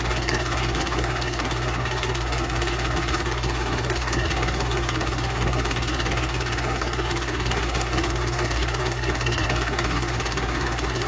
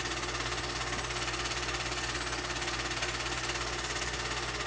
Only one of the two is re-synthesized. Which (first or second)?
first